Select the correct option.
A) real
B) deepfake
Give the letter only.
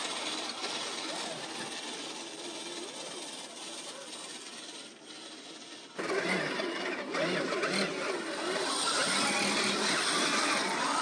A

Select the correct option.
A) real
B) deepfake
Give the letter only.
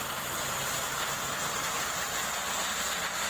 A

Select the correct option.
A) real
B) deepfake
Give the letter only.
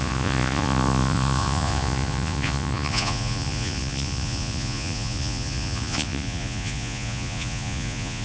B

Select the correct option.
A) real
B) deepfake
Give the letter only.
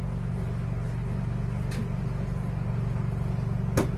A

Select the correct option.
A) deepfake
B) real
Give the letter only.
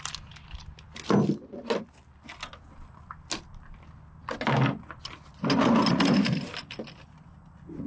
B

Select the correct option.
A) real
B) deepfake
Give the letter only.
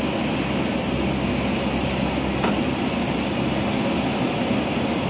A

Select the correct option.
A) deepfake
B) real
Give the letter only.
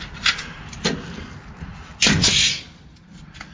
B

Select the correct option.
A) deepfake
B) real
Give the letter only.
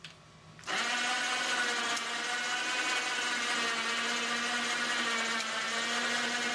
B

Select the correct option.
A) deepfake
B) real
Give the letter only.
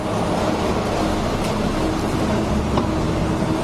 B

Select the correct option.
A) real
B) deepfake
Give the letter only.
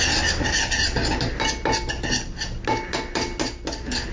A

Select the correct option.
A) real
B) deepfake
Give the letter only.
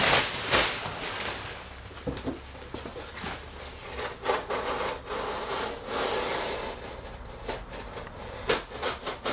A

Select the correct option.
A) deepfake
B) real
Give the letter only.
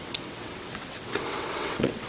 A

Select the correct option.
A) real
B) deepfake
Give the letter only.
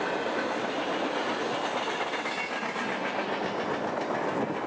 A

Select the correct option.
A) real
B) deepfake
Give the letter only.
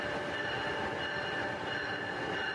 A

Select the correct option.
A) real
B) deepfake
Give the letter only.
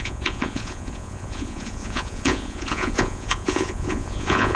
B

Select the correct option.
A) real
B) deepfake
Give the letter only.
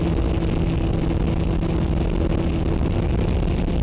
A